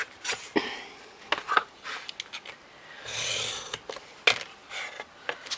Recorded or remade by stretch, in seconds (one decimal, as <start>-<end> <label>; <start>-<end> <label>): 0.0-0.6 remade; 0.6-5.6 recorded